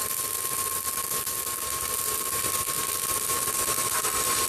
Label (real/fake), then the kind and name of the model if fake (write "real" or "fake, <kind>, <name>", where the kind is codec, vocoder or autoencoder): real